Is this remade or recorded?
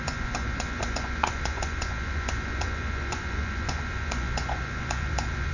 remade